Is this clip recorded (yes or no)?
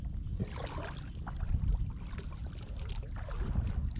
yes